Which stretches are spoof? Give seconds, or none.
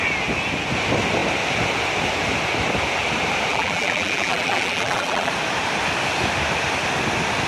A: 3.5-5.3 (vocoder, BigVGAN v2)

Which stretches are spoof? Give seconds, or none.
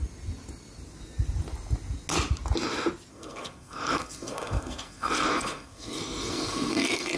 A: 3.1-7.2 (codec, SNAC)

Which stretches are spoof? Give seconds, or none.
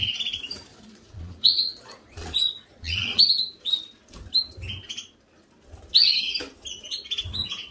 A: 0.7-3.2 (vocoder, Vocos)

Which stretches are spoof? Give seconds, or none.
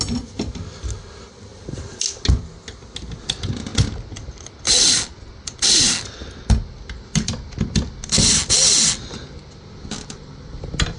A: none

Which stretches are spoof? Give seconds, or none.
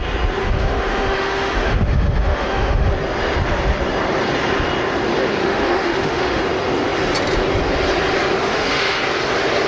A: 0.4-2.9 (autoencoder, DAC-VAE); 5.4-6.4; 8.4-9.0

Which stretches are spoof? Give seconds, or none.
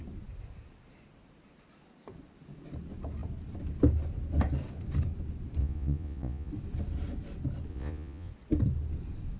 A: 5.6-6.5 (vocoder, Vocos); 7.7-8.3